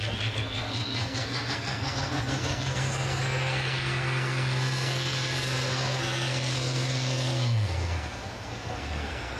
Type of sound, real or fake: fake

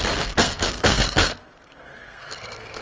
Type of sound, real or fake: fake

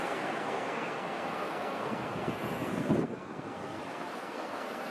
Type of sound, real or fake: fake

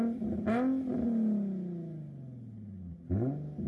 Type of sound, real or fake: real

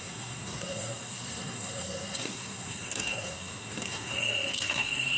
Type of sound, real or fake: fake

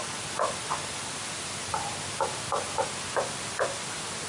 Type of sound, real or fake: real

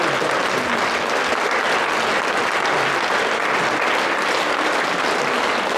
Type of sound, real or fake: real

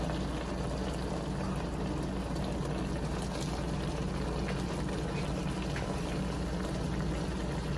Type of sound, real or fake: real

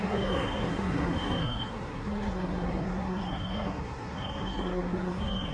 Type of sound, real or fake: fake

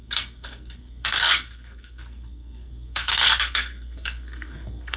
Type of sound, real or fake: fake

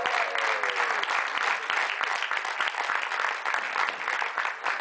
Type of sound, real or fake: real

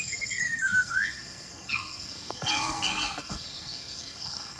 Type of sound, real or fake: fake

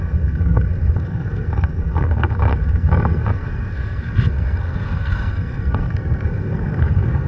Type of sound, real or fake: fake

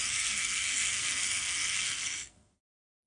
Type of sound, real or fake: fake